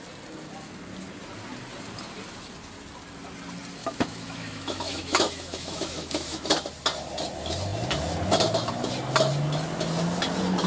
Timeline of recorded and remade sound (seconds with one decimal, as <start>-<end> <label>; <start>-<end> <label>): 0.0-3.8 recorded; 3.8-6.5 remade; 6.5-10.7 recorded